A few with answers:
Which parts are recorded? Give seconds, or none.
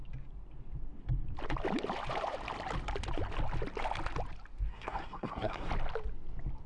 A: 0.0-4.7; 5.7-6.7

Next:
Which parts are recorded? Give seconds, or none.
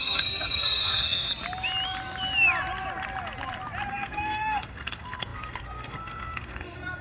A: 1.3-3.9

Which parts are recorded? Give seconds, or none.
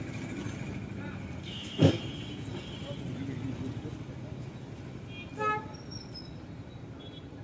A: 0.0-1.4; 2.0-7.4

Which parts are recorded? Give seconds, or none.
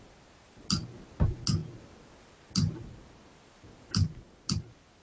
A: 0.0-5.0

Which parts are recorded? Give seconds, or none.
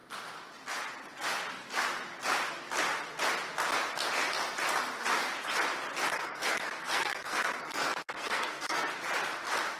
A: 0.0-6.1; 8.9-9.8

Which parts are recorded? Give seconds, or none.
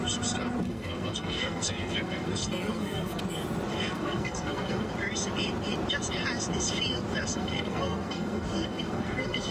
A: 0.0-0.7; 3.2-3.7; 4.9-7.3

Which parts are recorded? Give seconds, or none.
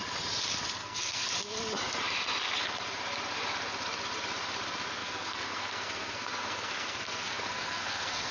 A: 0.0-0.8; 1.3-5.0